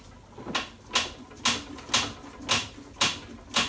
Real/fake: real